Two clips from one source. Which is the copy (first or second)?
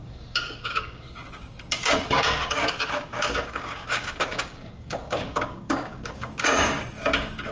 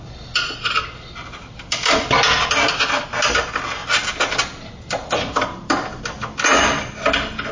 first